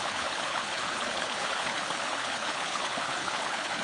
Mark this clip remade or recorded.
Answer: remade